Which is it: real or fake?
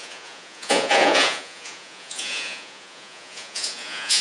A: fake